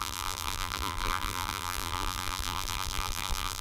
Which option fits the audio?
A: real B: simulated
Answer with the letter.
B